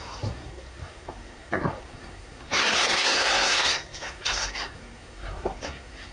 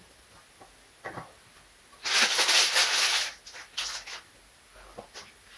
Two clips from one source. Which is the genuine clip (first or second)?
second